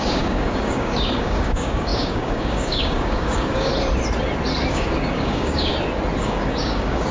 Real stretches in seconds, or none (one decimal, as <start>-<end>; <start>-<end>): 3.7-4.7; 5.7-6.2